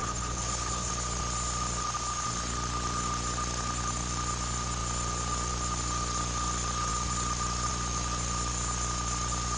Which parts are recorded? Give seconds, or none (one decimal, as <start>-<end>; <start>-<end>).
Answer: 0.9-9.6